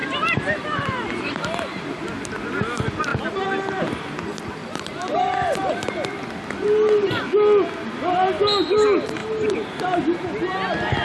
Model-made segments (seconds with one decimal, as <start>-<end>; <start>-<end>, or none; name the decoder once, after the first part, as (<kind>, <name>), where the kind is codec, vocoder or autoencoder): 0.0-2.0 (vocoder, BigVGAN v2); 4.6-5.9; 9.2-9.8